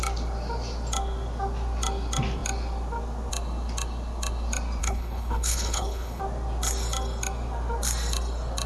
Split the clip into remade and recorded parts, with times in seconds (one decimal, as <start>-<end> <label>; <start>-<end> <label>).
0.0-4.8 recorded; 4.8-6.2 remade; 6.2-8.7 recorded